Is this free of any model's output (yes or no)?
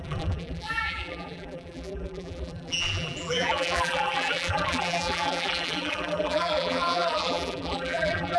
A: no